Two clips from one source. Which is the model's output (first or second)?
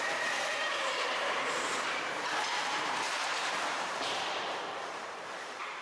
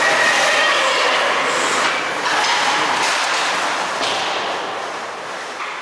first